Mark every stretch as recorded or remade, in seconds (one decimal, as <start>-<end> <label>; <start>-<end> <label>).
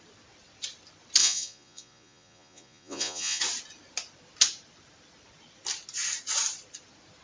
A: 0.0-1.2 recorded; 1.2-3.4 remade; 3.4-7.2 recorded